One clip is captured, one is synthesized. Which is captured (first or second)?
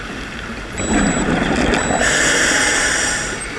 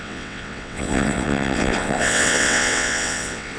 first